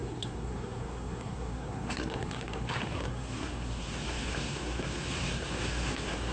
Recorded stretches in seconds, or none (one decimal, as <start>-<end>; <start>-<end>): none

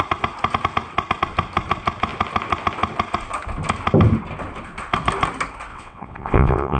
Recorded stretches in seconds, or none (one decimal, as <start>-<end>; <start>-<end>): 0.0-5.7